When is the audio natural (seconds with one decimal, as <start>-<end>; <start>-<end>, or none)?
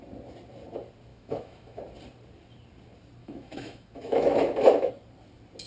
0.0-1.1; 1.8-3.2; 4.9-5.7